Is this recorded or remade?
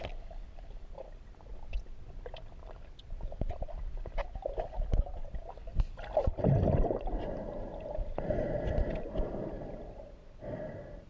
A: recorded